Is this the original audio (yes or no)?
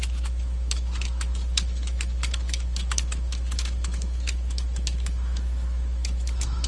no